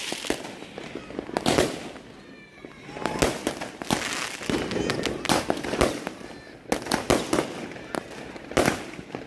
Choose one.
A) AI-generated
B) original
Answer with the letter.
B